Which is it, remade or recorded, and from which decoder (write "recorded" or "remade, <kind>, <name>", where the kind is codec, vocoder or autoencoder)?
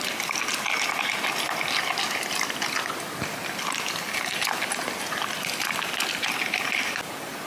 recorded